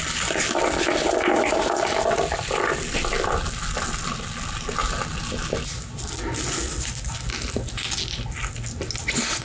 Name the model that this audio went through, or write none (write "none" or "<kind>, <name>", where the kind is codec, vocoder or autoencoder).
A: none